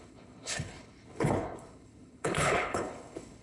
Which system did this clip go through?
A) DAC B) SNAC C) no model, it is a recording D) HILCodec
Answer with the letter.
D